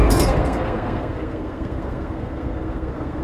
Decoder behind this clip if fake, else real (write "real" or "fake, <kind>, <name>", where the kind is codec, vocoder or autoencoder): fake, codec, SNAC